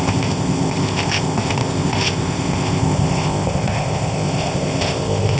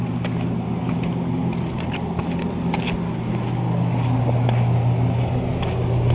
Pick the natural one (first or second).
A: second